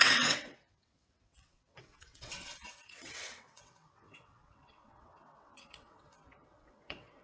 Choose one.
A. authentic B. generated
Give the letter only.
B